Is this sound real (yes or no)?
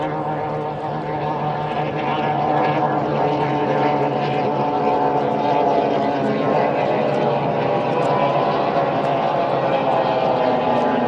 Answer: yes